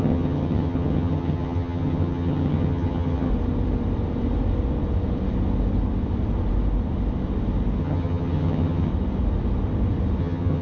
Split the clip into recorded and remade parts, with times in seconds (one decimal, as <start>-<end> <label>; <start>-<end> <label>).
0.0-3.3 remade; 3.3-7.8 recorded; 7.8-8.9 remade; 8.9-10.2 recorded; 10.2-10.6 remade